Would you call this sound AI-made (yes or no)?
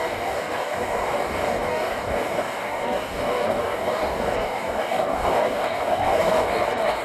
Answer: yes